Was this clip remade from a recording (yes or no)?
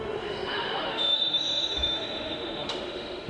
yes